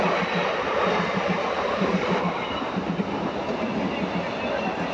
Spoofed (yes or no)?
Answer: no